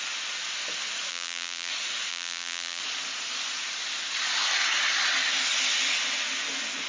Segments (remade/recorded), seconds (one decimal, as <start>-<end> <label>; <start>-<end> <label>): 0.0-1.1 recorded; 1.1-1.7 remade; 1.7-2.1 recorded; 2.1-2.8 remade; 2.8-6.9 recorded